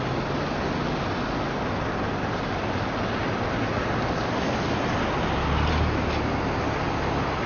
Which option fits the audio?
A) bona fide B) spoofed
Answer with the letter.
A